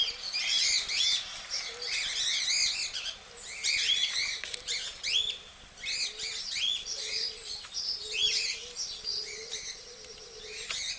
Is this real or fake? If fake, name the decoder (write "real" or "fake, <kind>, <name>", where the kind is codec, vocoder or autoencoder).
real